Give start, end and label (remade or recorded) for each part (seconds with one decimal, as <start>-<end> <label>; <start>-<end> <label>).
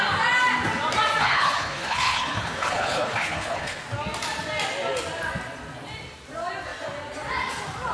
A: 0.0-1.2 recorded; 1.2-3.8 remade; 3.8-7.9 recorded